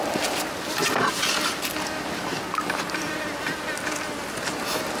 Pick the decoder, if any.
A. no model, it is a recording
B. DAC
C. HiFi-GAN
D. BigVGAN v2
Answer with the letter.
A